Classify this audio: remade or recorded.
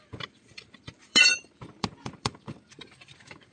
remade